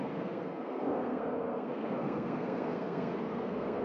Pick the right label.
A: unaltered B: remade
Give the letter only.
B